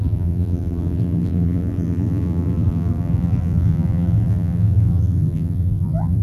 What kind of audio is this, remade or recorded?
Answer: remade